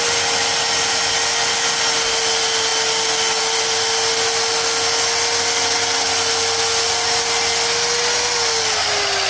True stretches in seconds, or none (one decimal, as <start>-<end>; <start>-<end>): 0.0-9.3